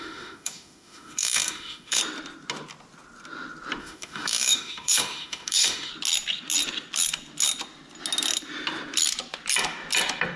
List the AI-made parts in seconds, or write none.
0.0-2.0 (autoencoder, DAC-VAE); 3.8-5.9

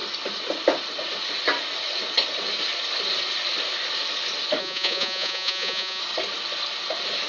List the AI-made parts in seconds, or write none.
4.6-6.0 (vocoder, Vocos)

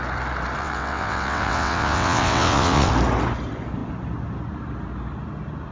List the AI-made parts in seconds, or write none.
0.6-2.9 (vocoder, WaveNeXt)

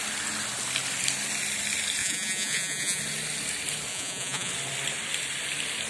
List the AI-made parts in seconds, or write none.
2.0-3.0 (vocoder, Vocos); 3.9-4.5

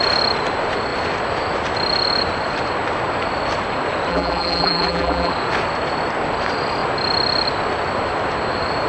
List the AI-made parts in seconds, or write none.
4.1-5.3 (vocoder, BigVGAN v2)

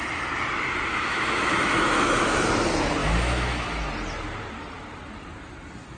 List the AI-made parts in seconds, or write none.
0.9-2.5 (autoencoder, DAC-VAE); 3.0-3.8